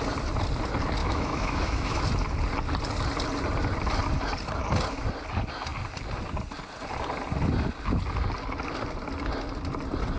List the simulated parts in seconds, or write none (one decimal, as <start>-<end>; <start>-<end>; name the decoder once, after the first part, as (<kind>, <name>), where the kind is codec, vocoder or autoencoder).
1.0-2.0 (autoencoder, DAC-VAE)